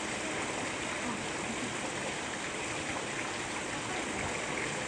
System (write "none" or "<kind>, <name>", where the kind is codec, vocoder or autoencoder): none